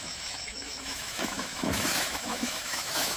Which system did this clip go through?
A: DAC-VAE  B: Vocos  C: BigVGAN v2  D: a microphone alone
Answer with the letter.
A